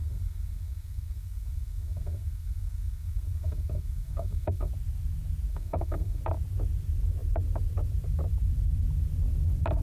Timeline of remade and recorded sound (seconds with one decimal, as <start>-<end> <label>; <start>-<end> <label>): 0.0-4.7 remade; 4.7-5.5 recorded; 5.5-6.2 remade; 6.2-9.8 recorded